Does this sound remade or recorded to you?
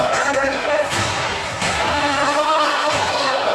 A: remade